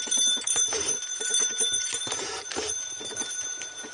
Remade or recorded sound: remade